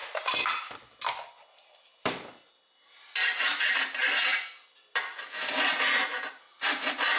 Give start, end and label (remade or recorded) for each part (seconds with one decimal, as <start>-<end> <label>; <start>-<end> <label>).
0.0-7.2 recorded